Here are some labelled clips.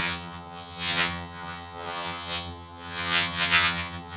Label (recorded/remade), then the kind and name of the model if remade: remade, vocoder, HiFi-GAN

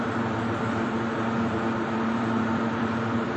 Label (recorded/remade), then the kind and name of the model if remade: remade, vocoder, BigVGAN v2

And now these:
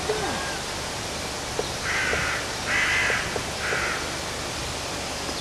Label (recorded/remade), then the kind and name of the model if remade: recorded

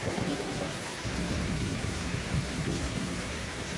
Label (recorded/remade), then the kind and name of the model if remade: remade, codec, SNAC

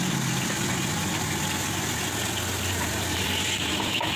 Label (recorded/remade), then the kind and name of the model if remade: recorded